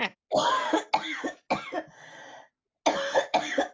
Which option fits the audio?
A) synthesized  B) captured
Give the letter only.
B